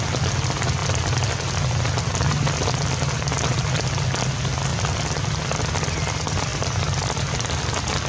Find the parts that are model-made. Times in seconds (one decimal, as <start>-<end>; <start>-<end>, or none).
4.7-5.7